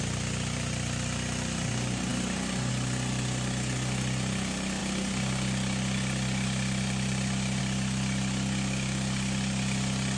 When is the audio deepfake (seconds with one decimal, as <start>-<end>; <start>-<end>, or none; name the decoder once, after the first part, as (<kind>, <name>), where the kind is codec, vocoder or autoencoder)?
none